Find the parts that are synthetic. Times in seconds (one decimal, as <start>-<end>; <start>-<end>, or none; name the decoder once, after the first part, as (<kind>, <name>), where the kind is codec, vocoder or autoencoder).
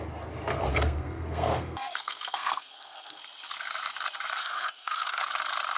0.7-3.2 (codec, SNAC); 4.4-5.2